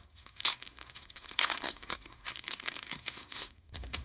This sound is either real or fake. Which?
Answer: fake